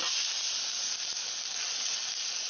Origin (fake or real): real